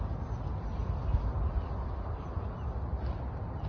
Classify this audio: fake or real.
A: real